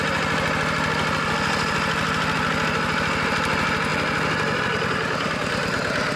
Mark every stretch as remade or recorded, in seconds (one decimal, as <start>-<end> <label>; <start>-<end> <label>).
0.0-6.2 recorded